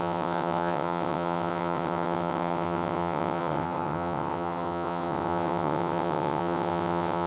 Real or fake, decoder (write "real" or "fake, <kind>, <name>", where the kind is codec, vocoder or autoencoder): fake, vocoder, WaveNeXt